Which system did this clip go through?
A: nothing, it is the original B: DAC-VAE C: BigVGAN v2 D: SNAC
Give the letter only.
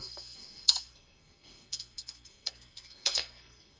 D